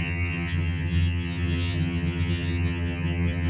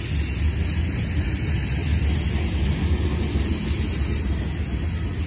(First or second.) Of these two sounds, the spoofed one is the first